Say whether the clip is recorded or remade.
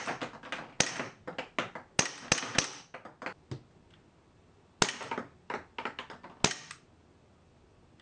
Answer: recorded